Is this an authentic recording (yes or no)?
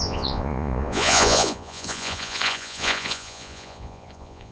no